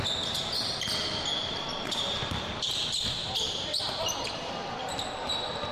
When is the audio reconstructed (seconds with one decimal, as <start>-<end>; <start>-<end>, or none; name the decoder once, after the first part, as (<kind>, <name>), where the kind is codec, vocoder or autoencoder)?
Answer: none